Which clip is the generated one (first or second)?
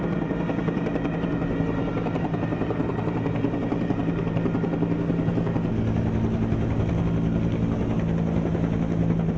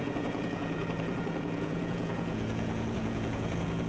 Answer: second